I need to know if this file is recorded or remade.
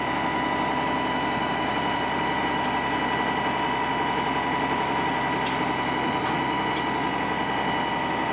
recorded